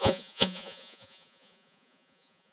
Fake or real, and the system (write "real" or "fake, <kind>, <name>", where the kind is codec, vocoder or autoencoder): fake, vocoder, Vocos